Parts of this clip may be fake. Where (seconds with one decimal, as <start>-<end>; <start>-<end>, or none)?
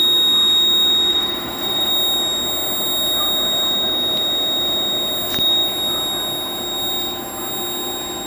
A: 1.1-1.9